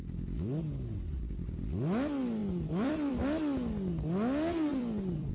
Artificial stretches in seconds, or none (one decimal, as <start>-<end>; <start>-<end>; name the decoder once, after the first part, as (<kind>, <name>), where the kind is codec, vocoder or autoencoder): 2.4-3.1 (vocoder, BigVGAN v2); 4.7-5.3